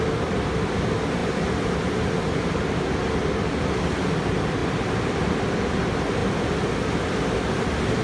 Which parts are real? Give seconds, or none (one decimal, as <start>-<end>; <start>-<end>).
0.0-8.0